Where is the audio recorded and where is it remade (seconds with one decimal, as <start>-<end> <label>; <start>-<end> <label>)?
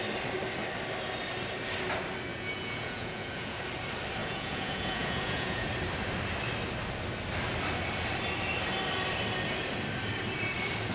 0.0-2.3 recorded; 2.3-3.6 remade; 3.6-4.2 recorded; 4.2-5.7 remade; 5.7-10.9 recorded